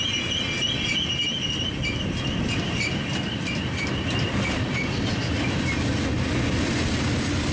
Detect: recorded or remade recorded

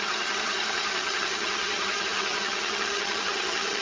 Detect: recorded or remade remade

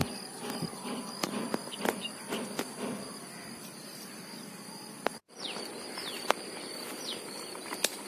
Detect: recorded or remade remade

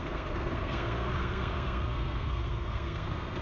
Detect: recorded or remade remade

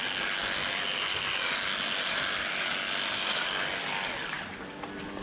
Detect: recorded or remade recorded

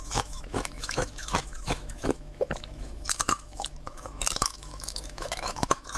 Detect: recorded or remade remade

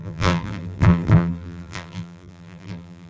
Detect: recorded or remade remade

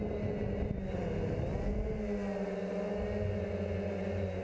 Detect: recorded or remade recorded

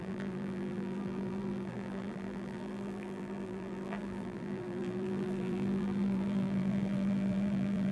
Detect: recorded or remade remade